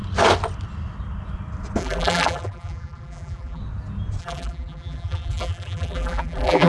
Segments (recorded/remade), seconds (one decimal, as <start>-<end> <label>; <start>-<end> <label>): 0.0-1.8 recorded; 1.8-3.6 remade; 3.6-4.2 recorded; 4.2-6.7 remade